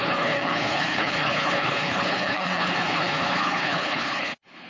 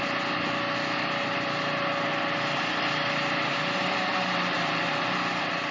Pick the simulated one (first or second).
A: first